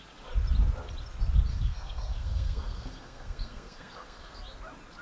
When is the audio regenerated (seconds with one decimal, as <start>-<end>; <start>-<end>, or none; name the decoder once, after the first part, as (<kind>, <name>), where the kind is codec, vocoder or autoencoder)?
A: 1.5-4.4 (codec, SNAC)